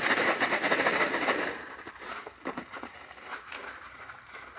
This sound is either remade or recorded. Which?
remade